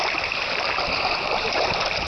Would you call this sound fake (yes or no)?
no